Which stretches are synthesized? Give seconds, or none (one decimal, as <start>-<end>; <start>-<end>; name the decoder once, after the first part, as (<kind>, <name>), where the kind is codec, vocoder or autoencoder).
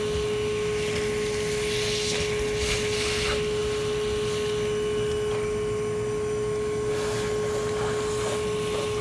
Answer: none